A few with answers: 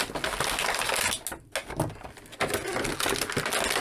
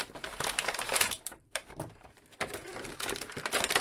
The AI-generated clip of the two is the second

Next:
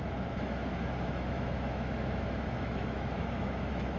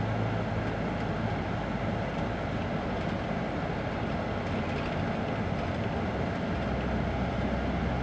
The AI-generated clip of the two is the first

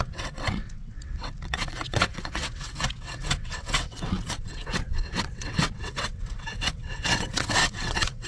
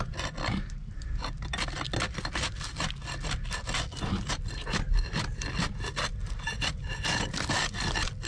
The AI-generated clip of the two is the first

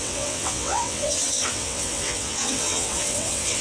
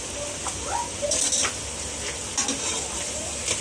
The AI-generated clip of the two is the first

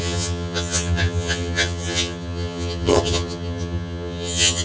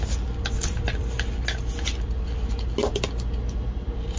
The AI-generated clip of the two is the first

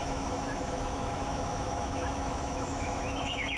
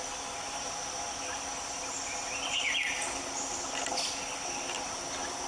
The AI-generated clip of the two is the first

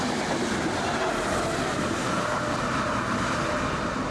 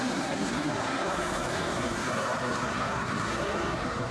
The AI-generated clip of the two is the second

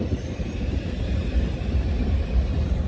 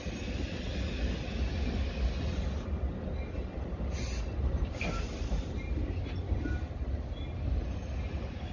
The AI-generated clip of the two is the first